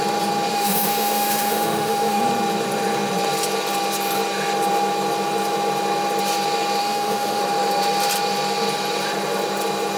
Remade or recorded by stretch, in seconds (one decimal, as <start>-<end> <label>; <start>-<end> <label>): 0.0-0.5 recorded; 0.5-2.2 remade; 2.2-6.8 recorded; 6.8-7.4 remade; 7.4-10.0 recorded